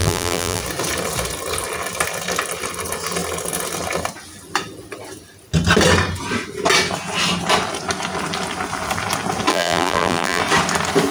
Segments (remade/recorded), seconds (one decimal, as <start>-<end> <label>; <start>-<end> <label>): 0.0-0.6 remade; 0.6-9.5 recorded; 9.5-10.4 remade; 10.4-11.1 recorded